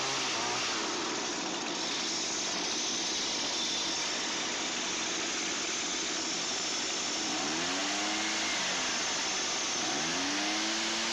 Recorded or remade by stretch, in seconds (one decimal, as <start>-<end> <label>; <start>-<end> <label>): 0.0-11.1 recorded